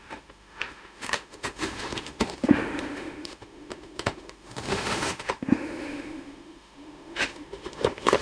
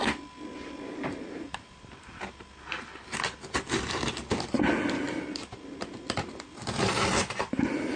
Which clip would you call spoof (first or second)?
first